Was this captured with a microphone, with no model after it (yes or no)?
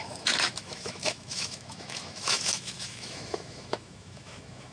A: no